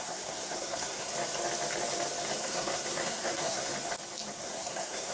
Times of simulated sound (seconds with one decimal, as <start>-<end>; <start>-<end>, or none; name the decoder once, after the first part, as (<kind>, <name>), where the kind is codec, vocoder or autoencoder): 0.0-1.1 (codec, SNAC); 2.4-3.7; 4.4-5.1